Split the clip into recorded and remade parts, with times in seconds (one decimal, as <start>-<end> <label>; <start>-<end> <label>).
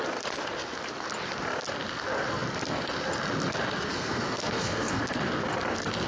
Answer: 0.0-3.9 recorded; 3.9-5.0 remade; 5.0-6.1 recorded